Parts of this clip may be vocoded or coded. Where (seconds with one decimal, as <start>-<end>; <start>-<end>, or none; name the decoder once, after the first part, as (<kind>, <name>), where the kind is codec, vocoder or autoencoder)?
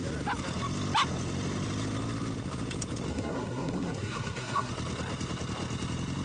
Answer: 3.1-4.7 (codec, SNAC)